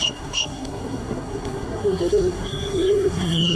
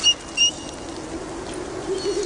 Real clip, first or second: second